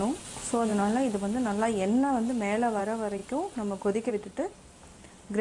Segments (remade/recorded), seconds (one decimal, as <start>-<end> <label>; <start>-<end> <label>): 0.0-5.4 recorded